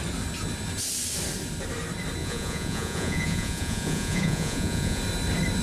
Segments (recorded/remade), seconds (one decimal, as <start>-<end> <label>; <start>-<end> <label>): 0.0-2.2 recorded; 2.2-5.0 remade; 5.0-5.6 recorded